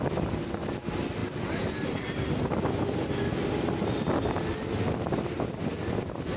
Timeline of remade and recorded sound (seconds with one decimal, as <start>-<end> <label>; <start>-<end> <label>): 0.0-6.4 recorded